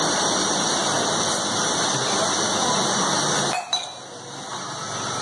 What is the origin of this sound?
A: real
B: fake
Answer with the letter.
A